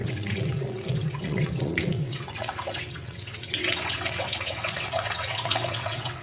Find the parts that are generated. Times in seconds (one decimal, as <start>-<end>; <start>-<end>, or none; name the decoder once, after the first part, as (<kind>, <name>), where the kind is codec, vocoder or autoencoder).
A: 0.0-6.2 (vocoder, WaveNeXt)